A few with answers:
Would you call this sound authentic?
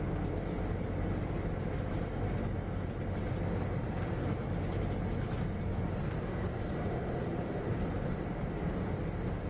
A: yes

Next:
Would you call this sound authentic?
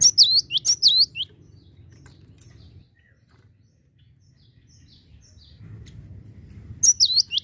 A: yes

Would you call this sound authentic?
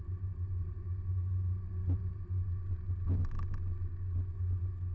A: yes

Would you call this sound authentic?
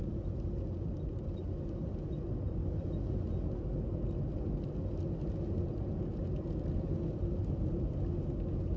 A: yes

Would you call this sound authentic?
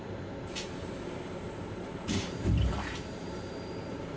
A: no